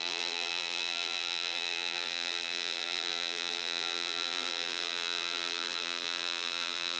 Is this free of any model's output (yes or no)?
no